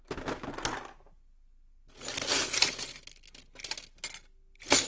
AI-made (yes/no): no